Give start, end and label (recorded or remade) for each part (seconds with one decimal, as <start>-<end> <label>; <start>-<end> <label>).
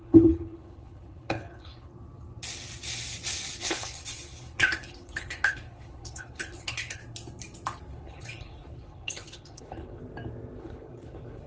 0.0-1.9 remade; 1.9-3.6 recorded; 3.6-7.0 remade; 7.0-7.9 recorded; 7.9-10.0 remade; 10.0-10.6 recorded; 10.6-11.5 remade